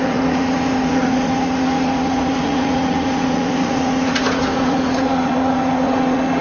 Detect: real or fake fake